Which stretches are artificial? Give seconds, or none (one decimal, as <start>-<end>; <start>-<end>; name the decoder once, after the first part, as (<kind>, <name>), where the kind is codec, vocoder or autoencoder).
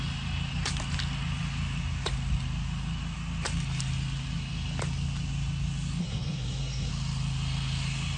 6.0-6.9 (codec, SNAC)